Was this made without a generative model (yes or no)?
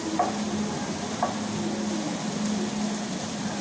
yes